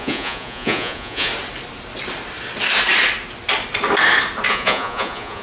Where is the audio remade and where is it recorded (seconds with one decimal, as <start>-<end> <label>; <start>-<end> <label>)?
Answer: 0.0-1.3 remade; 1.3-4.5 recorded; 4.5-5.4 remade